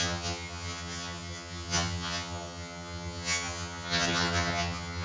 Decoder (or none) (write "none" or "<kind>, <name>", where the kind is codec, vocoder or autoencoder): vocoder, HiFi-GAN